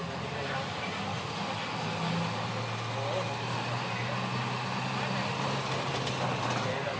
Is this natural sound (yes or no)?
yes